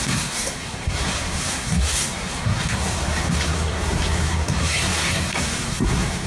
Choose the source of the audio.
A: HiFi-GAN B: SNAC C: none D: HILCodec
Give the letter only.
B